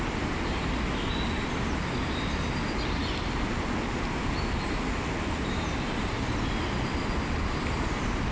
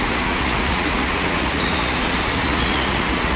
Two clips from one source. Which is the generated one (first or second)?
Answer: second